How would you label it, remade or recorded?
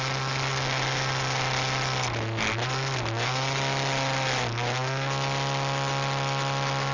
recorded